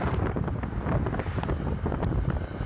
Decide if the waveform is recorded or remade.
recorded